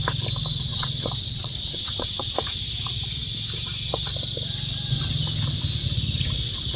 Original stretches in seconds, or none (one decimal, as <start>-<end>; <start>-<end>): 0.0-0.7; 2.3-6.8